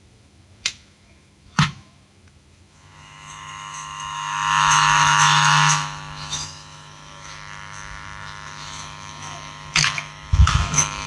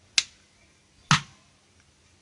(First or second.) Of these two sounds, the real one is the second